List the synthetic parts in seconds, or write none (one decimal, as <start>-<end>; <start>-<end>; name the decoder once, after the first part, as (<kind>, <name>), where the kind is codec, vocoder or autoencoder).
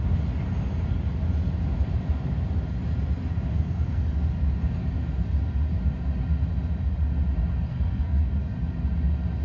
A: 3.5-4.0 (codec, SNAC); 7.7-8.2